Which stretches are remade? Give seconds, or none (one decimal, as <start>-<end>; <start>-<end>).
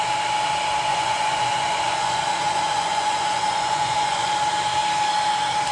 0.9-4.3